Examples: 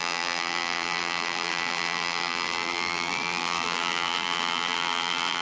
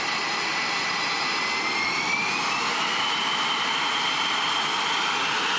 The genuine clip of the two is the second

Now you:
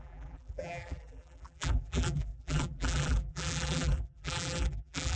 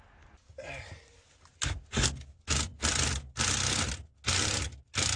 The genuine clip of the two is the second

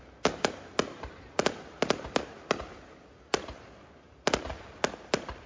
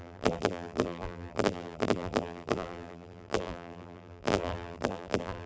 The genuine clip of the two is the first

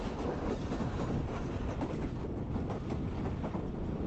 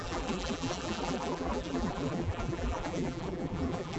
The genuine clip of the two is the first